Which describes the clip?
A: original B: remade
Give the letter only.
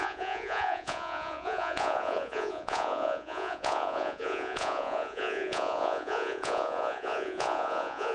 B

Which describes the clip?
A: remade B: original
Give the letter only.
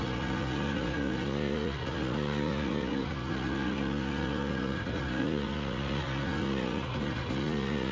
A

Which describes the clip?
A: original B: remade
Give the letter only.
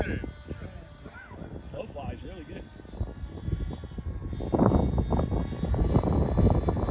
A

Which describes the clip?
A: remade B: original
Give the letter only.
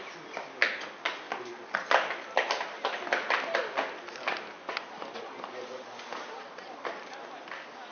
B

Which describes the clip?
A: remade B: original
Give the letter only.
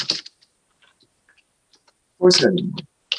B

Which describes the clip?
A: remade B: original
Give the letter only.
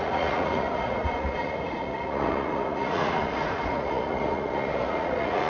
A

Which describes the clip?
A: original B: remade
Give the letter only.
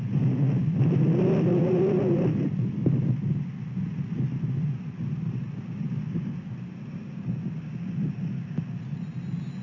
A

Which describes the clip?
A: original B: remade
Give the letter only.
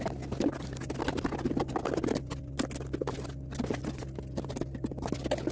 A